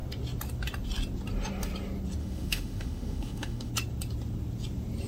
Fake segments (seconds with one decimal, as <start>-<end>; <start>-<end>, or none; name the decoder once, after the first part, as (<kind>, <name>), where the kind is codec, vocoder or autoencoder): 2.2-3.7 (autoencoder, DAC-VAE)